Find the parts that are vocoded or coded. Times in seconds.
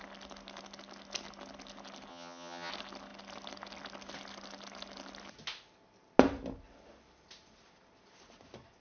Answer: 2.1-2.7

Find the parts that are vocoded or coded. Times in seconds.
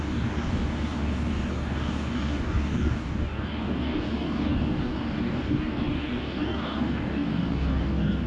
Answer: 0.0-8.3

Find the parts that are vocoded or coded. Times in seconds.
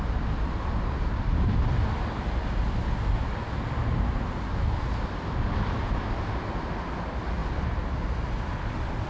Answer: none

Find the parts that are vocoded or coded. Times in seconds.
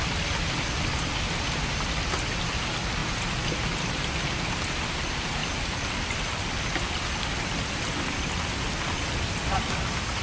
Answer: none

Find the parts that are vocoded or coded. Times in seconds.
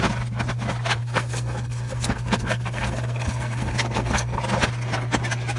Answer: 1.0-4.4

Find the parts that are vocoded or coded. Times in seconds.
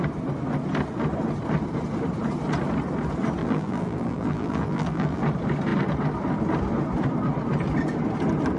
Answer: 3.4-5.2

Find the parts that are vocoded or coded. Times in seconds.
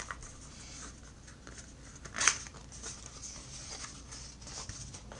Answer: none